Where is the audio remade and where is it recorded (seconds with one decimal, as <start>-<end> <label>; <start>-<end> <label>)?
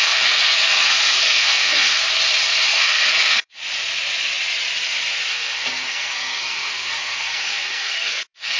0.0-2.0 remade; 2.0-2.7 recorded; 2.7-3.6 remade; 3.6-5.3 recorded; 5.3-8.6 remade